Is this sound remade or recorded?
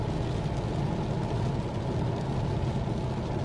recorded